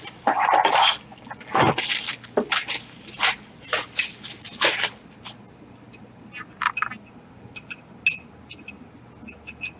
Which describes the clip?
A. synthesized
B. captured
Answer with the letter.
B